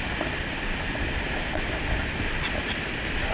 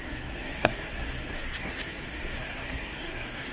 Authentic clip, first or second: first